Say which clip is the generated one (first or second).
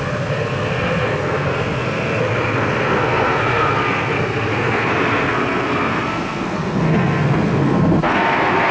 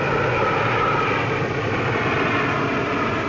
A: first